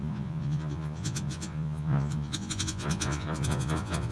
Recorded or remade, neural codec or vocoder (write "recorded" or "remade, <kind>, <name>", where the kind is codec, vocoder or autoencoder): remade, vocoder, Vocos